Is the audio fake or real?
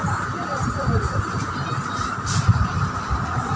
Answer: fake